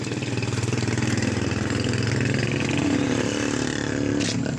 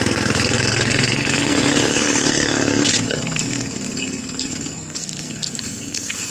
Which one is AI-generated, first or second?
second